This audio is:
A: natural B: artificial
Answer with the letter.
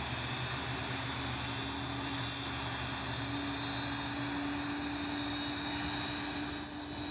A